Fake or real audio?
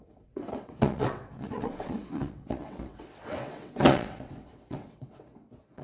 fake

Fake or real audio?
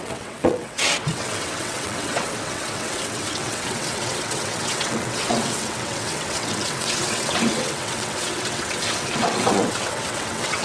fake